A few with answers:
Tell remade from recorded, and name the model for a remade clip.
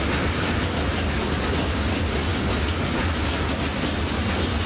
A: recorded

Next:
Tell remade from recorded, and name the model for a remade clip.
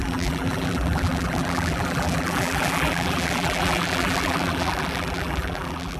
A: remade, vocoder, BigVGAN v2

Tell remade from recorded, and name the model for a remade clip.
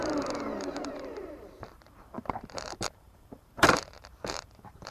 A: remade, vocoder, BigVGAN v2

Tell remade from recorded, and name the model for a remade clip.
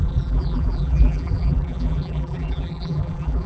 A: remade, vocoder, BigVGAN v2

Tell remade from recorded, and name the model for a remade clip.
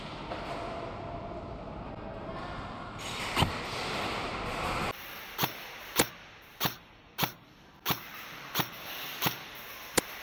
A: recorded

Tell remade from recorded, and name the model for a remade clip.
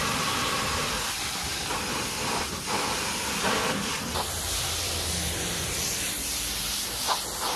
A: remade, vocoder, BigVGAN v2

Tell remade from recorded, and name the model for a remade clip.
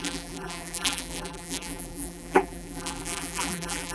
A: remade, vocoder, BigVGAN v2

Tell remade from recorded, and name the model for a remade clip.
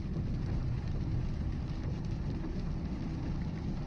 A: recorded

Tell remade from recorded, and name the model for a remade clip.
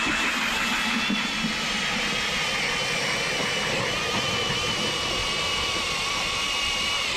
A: recorded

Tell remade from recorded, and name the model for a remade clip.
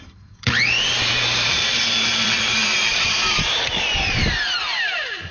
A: remade, vocoder, BigVGAN v2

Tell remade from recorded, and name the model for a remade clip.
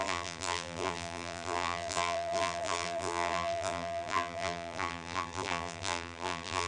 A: remade, vocoder, BigVGAN v2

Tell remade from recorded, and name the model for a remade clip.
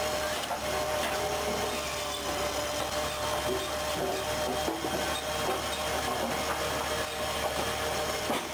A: recorded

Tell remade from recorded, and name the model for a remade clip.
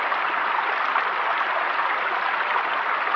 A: recorded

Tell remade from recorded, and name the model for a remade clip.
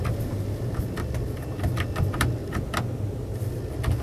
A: recorded